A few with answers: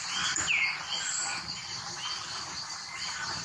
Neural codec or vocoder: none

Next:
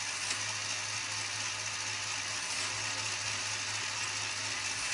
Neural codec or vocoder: none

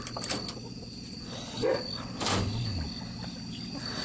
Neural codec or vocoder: none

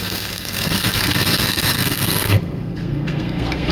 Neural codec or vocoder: codec, SNAC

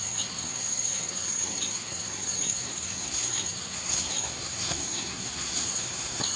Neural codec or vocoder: codec, SNAC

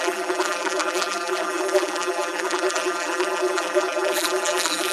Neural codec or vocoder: vocoder, BigVGAN v2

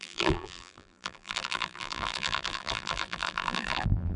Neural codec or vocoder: vocoder, BigVGAN v2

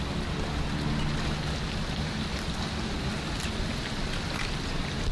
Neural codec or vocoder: none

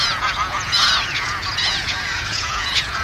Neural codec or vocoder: vocoder, Vocos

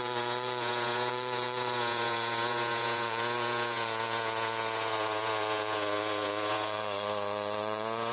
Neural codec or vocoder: vocoder, Vocos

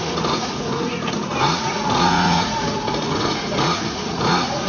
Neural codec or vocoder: vocoder, Vocos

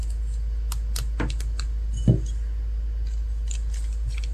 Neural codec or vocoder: none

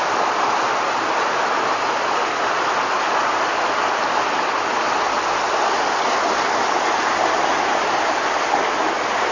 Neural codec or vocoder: none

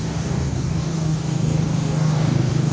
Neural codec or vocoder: codec, DAC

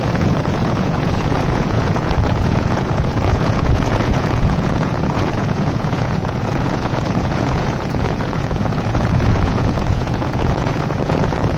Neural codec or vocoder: vocoder, Vocos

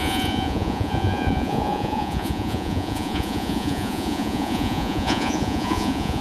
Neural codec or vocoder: vocoder, Vocos